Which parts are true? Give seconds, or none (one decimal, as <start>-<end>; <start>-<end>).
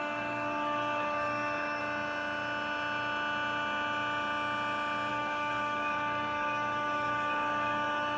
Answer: 1.8-5.1